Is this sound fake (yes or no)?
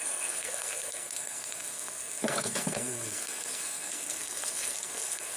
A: yes